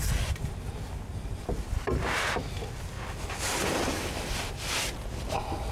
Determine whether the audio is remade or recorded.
recorded